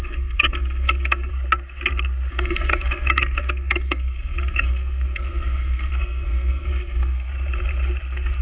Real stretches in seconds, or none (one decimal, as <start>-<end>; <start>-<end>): 1.3-2.3; 7.3-8.4